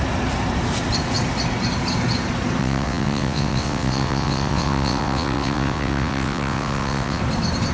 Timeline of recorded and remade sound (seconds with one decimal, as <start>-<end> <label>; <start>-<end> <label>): 0.0-2.6 recorded; 2.6-7.2 remade; 7.2-7.7 recorded

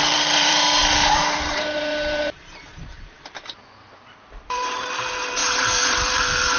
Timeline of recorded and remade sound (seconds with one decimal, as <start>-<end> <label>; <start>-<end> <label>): 0.0-6.6 remade

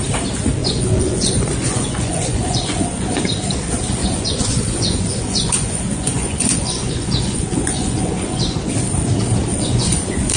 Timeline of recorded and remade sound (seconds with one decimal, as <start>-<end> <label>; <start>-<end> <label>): 0.0-0.6 recorded; 0.6-3.2 remade; 3.2-4.0 recorded; 4.0-8.7 remade; 8.7-9.5 recorded; 9.5-10.4 remade

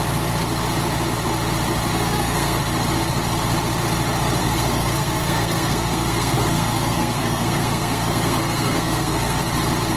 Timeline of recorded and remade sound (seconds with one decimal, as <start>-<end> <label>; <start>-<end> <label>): 0.0-1.9 recorded; 1.9-2.6 remade; 2.6-4.4 recorded; 4.4-9.4 remade; 9.4-10.0 recorded

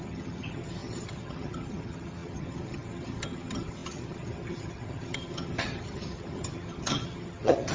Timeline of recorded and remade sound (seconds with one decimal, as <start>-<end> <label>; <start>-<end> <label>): 0.0-7.7 remade